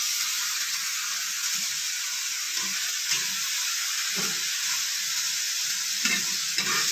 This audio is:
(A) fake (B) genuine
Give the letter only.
B